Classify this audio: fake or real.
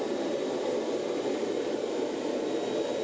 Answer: real